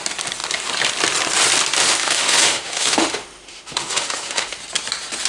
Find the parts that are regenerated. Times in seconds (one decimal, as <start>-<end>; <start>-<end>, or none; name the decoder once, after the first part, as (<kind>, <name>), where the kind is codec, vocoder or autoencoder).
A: 1.8-4.6 (autoencoder, DAC-VAE)